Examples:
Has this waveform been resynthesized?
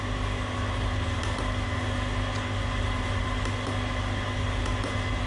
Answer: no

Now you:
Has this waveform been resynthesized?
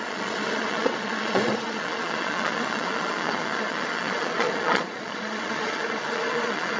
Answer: yes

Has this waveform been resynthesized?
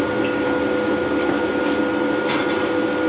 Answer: no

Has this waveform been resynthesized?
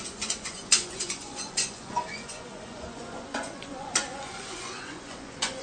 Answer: yes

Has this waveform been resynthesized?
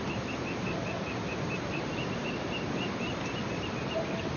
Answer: yes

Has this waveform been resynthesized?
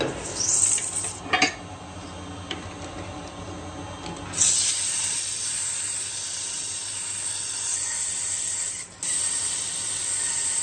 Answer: no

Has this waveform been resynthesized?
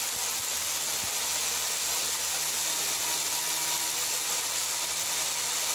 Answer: no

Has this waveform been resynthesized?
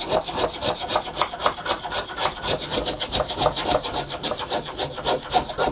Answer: yes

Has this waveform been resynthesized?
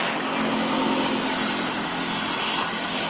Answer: no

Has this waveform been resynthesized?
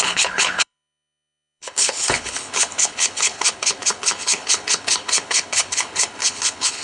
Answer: yes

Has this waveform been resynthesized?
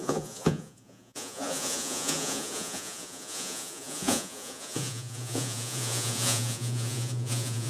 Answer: yes